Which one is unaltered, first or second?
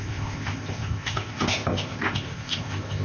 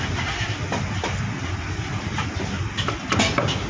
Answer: second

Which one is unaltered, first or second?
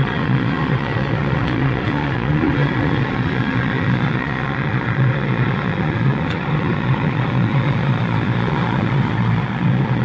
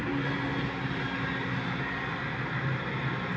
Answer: second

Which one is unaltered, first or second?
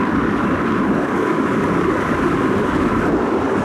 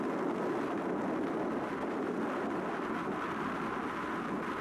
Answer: second